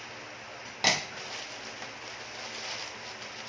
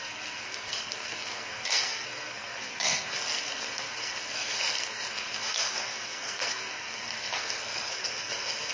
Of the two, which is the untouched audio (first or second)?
first